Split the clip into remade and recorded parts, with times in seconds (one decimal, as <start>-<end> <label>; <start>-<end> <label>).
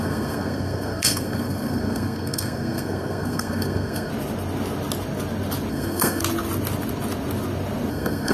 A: 0.0-4.1 remade; 4.1-5.7 recorded; 5.7-6.2 remade; 6.2-7.9 recorded; 7.9-8.3 remade